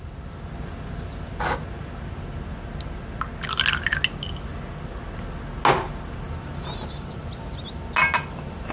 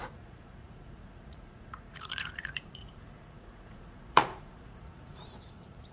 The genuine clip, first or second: first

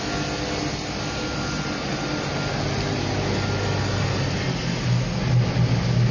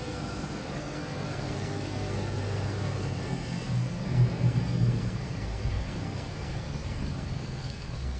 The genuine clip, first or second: first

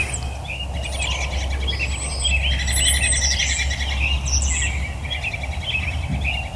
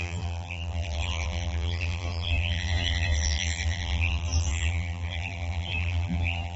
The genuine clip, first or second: first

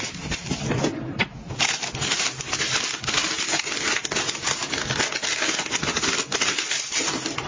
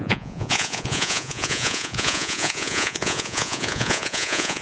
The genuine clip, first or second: first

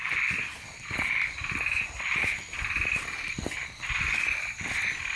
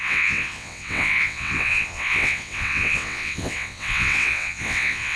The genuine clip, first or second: first